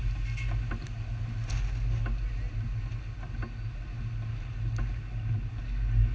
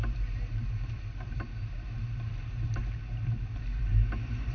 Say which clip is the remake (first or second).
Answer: second